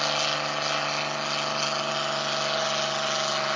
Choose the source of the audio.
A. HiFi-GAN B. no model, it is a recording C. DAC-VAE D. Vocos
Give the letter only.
B